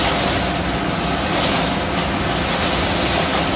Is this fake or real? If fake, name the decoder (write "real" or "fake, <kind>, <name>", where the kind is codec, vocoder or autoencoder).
real